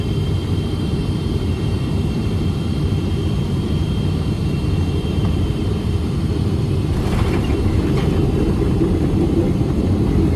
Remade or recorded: remade